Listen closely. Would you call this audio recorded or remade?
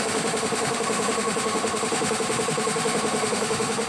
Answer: remade